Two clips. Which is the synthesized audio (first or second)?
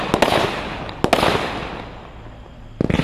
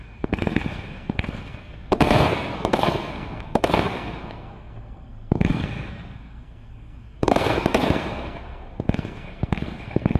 second